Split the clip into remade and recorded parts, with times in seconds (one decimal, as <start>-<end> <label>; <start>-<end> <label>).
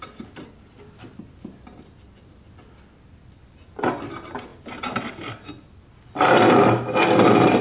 0.0-7.6 recorded